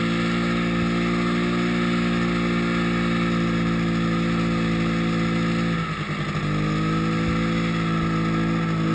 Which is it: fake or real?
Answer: real